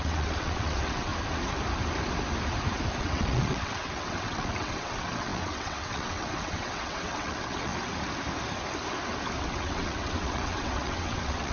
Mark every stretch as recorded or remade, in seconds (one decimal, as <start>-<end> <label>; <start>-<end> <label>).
0.0-1.1 remade; 1.1-3.0 recorded; 3.0-7.7 remade; 7.7-9.4 recorded; 9.4-11.5 remade